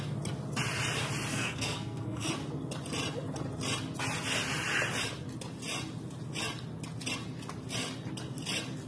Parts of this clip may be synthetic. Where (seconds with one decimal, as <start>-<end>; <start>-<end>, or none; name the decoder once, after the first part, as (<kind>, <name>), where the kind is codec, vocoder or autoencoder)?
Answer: 1.3-2.3 (codec, SNAC)